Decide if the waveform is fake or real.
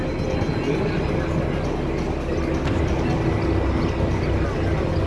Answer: real